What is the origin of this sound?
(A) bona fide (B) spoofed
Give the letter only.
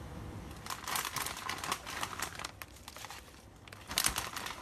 A